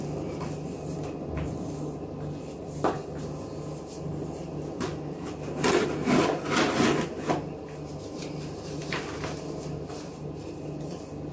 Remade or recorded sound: recorded